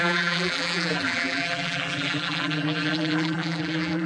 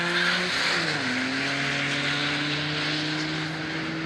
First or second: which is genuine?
second